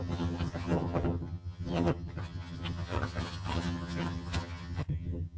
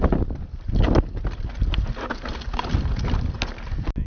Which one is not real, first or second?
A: first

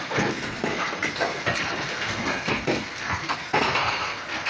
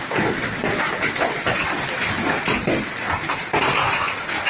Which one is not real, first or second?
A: first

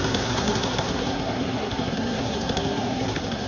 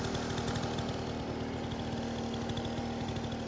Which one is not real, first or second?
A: first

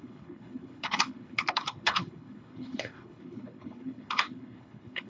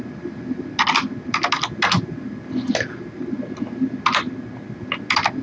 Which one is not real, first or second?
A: first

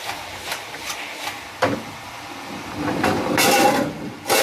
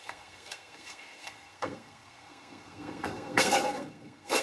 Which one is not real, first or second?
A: second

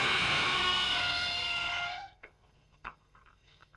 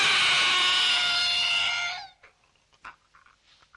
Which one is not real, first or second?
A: first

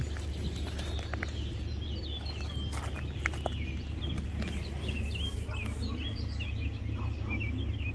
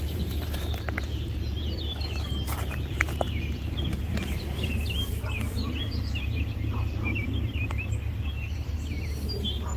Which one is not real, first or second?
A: second